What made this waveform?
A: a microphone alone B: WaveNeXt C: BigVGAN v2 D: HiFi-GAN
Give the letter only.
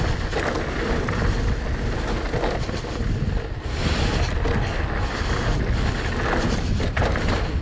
A